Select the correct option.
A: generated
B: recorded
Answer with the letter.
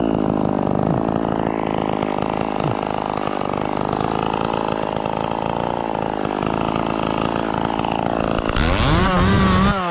B